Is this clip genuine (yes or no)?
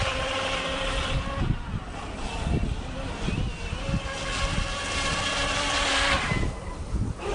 yes